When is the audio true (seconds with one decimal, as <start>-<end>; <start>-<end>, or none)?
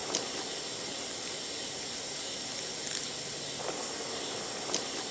0.0-5.1